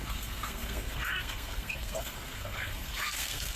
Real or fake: fake